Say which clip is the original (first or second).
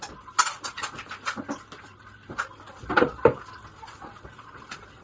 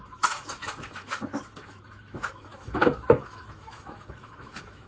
first